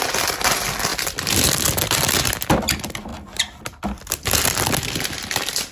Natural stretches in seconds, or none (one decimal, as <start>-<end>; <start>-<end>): 0.0-0.9; 2.0-3.1; 4.0-5.7